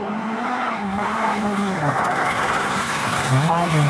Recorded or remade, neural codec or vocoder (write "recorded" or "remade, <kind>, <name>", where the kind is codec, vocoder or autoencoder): remade, codec, SNAC